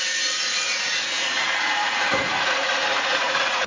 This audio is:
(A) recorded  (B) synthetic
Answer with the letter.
B